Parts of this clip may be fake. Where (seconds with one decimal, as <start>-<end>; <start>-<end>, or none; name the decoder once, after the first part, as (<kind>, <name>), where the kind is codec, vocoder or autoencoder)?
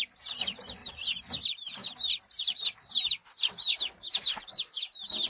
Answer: 0.8-1.4 (vocoder, BigVGAN v2)